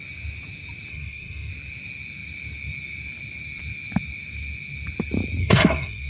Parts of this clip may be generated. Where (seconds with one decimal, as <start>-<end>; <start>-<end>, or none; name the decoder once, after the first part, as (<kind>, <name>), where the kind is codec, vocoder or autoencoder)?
0.9-1.5 (codec, SNAC); 5.4-6.1